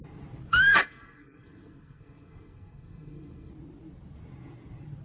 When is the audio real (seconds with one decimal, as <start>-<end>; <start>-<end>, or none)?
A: 0.0-0.5; 3.5-5.0

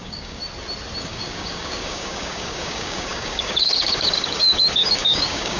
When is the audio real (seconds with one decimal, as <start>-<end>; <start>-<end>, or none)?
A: 0.4-1.0